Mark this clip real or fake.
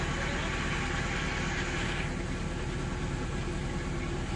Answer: real